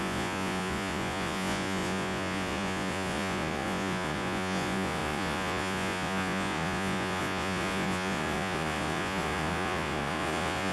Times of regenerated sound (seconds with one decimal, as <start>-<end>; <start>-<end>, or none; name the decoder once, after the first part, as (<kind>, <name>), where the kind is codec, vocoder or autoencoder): 0.0-10.7 (vocoder, Vocos)